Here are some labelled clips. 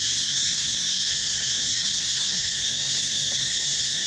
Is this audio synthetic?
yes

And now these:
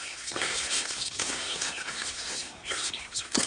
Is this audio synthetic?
yes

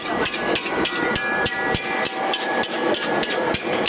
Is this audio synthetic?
yes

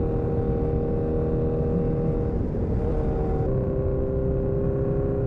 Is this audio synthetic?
no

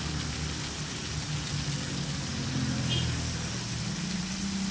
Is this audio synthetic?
no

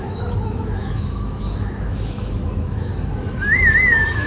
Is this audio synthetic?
yes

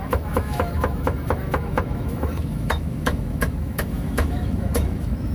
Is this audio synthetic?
yes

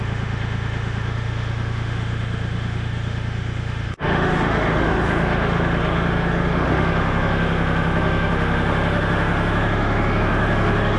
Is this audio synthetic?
yes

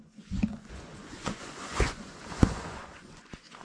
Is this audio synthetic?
yes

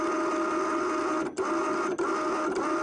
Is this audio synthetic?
no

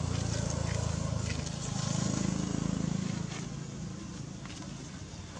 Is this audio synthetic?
no